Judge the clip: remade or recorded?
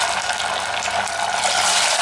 recorded